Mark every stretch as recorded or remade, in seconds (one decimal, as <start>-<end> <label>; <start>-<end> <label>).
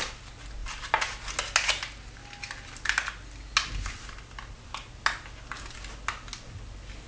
0.0-7.1 recorded